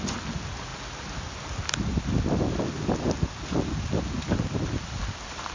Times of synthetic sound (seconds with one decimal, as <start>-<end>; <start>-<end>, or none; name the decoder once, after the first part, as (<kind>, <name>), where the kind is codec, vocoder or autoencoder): none